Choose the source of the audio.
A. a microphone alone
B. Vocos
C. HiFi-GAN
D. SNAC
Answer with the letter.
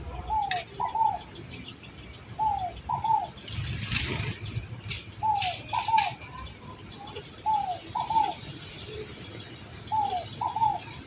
A